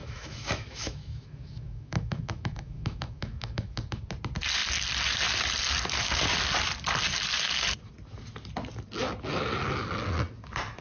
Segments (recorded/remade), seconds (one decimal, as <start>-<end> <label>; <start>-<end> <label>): 0.0-4.0 remade; 4.0-10.8 recorded